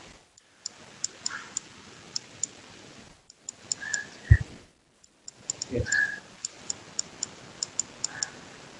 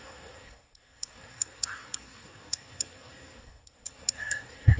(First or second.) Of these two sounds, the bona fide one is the first